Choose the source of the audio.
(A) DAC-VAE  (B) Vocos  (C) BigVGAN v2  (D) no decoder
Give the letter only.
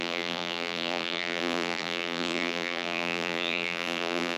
C